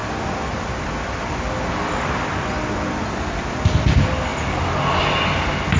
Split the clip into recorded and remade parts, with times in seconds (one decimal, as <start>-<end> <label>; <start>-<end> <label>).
0.0-5.8 recorded